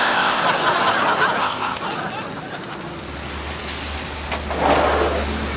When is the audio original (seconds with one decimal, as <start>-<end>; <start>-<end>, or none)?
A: 0.4-1.4; 1.8-5.6